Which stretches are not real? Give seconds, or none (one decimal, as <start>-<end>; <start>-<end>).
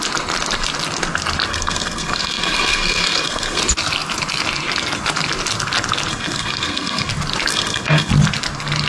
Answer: 1.5-3.6; 6.1-7.1; 7.5-8.1